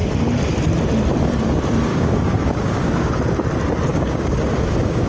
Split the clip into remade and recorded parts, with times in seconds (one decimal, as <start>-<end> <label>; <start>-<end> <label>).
0.0-1.9 recorded; 1.9-3.1 remade; 3.1-3.9 recorded; 3.9-5.1 remade